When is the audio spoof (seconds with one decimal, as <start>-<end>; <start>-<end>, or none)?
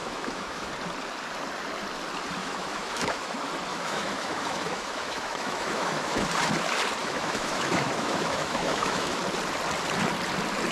0.0-0.7; 2.4-3.3; 3.7-6.3; 7.0-9.2